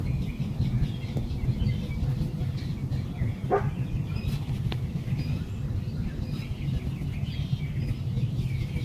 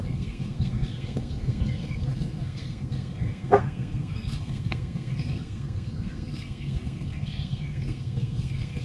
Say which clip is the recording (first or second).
first